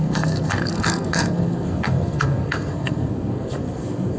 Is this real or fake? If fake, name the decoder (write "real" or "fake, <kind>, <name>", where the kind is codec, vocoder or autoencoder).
fake, codec, SNAC